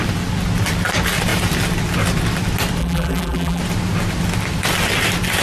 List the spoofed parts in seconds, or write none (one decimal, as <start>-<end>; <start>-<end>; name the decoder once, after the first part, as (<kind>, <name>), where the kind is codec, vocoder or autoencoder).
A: 2.8-3.6 (vocoder, BigVGAN v2)